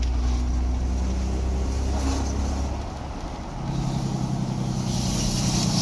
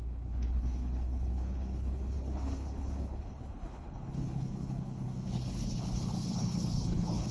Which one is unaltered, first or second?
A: first